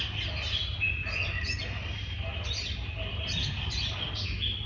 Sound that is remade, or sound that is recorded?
recorded